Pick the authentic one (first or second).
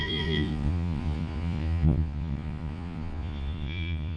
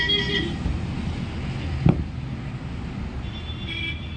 second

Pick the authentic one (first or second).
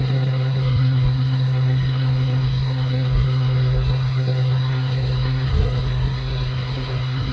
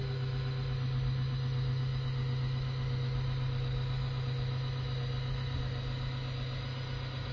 second